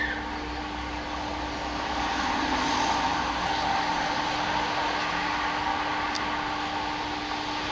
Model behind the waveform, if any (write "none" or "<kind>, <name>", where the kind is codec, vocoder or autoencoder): none